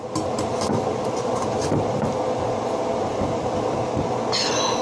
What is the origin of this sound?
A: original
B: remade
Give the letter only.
A